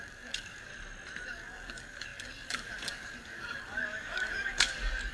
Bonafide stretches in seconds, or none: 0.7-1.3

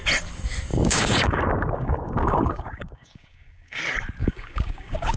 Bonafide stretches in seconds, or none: 0.0-0.7; 3.8-4.2